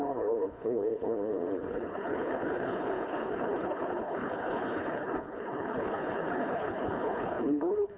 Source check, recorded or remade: remade